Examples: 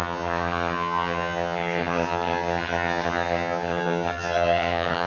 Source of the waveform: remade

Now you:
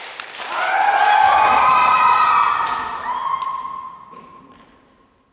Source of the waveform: recorded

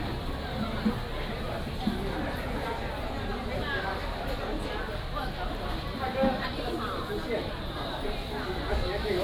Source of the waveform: recorded